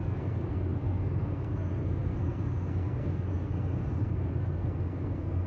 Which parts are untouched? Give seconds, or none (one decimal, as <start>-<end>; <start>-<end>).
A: none